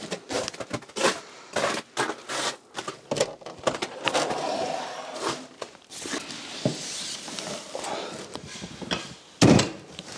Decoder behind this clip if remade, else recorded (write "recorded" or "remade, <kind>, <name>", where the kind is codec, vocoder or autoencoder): recorded